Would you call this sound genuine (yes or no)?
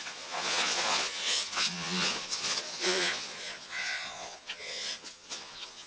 no